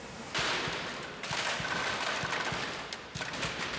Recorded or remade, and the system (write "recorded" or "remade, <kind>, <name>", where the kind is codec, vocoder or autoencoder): recorded